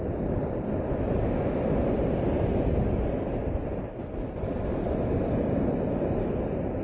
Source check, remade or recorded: recorded